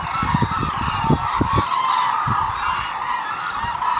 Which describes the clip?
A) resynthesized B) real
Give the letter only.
B